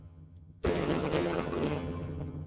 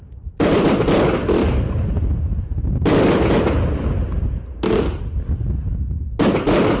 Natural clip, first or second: second